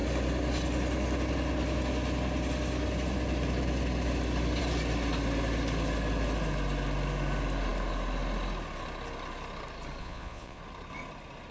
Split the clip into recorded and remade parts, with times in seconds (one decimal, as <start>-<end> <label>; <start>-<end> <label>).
0.0-10.0 recorded; 10.0-10.6 remade; 10.6-11.5 recorded